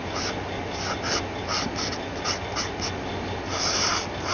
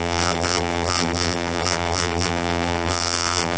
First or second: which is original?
first